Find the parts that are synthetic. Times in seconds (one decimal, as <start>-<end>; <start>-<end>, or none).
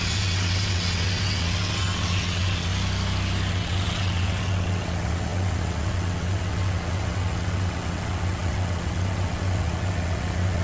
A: 0.0-2.7; 3.5-10.6